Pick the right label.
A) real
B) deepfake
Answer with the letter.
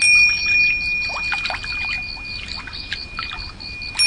A